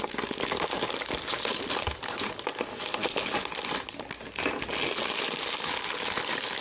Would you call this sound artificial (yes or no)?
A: no